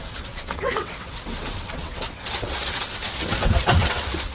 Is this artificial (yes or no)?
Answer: yes